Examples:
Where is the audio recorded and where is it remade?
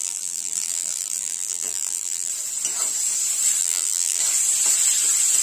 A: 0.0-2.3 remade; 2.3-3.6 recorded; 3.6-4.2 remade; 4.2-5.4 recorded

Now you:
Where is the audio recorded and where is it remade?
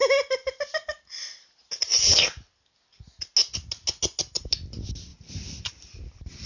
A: 0.0-5.1 recorded; 5.1-5.7 remade; 5.7-6.5 recorded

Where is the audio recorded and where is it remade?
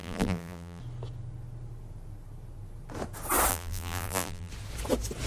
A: 0.0-0.8 remade; 0.8-3.5 recorded; 3.5-4.5 remade; 4.5-5.3 recorded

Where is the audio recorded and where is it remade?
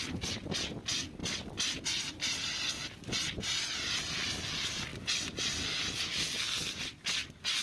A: 0.0-7.6 recorded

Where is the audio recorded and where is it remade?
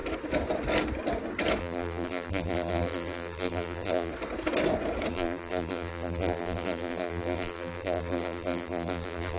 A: 0.0-1.6 recorded; 1.6-4.1 remade; 4.1-5.1 recorded; 5.1-9.4 remade